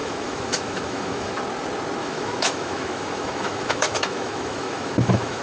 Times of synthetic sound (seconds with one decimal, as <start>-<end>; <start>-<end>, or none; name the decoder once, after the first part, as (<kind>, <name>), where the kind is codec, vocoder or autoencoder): 0.0-1.4 (autoencoder, DAC-VAE); 2.0-5.4